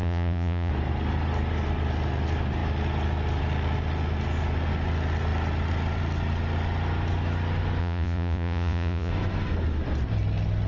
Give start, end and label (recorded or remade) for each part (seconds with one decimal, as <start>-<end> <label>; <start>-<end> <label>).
0.0-0.7 remade; 0.7-7.8 recorded; 7.8-9.1 remade; 9.1-10.7 recorded